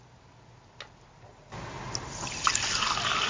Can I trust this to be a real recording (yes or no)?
yes